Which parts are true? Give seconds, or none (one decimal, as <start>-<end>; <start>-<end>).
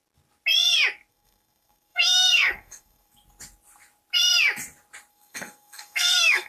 0.0-1.1; 3.2-5.1